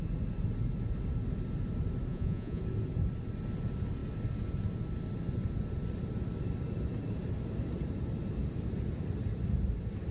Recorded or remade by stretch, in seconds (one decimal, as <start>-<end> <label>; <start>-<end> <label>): 0.0-2.1 recorded; 2.1-2.6 remade; 2.6-10.1 recorded